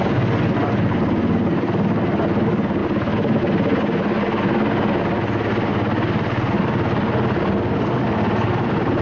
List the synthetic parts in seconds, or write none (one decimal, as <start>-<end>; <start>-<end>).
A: none